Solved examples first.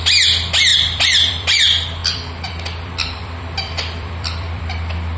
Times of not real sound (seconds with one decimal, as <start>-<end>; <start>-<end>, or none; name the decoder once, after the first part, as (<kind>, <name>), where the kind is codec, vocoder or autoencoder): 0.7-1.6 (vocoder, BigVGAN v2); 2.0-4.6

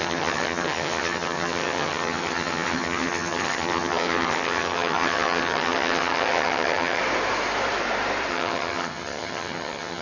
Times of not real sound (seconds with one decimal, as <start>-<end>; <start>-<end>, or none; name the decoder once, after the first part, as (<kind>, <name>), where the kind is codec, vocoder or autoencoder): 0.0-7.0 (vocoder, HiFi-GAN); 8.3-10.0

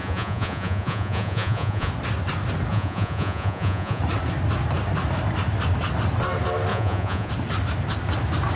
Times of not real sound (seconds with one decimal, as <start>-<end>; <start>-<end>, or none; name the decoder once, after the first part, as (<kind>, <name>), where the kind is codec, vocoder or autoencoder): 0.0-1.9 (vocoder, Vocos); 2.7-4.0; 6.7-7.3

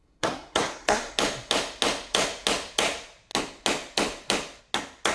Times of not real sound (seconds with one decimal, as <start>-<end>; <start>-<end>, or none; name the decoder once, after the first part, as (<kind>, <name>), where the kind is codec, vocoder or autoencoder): 0.0-1.1 (codec, SNAC)

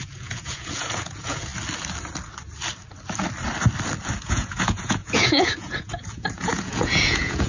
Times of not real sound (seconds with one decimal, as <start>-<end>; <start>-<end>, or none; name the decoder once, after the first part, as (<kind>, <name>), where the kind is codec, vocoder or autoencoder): 0.0-1.5 (vocoder, Vocos); 4.2-7.5

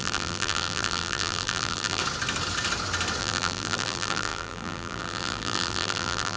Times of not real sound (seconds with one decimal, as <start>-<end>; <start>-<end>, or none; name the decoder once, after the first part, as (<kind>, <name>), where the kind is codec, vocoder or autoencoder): 0.0-2.0 (vocoder, BigVGAN v2); 3.2-6.4

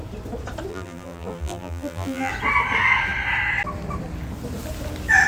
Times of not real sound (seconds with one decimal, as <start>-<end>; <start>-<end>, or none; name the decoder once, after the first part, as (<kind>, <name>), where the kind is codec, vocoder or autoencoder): 0.7-2.3 (vocoder, BigVGAN v2)

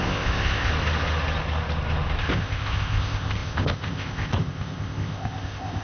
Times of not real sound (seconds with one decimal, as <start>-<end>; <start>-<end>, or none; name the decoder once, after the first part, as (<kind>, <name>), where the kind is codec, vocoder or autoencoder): 0.0-0.7 (codec, ZipCodec); 2.2-5.8